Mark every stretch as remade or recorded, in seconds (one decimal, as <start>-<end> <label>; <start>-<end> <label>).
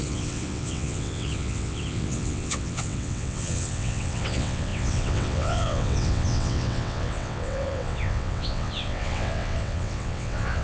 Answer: 0.0-10.6 remade